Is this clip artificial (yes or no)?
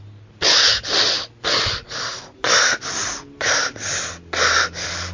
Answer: no